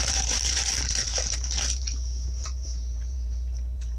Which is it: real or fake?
fake